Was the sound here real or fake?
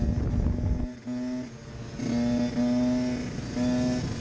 real